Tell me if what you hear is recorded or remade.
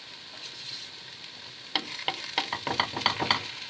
recorded